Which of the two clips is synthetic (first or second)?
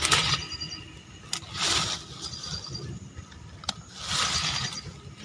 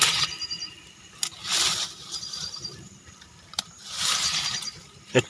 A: second